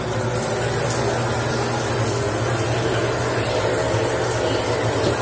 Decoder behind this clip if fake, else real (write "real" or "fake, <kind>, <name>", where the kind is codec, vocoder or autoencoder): real